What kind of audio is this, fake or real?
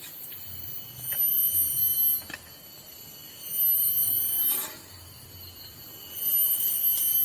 real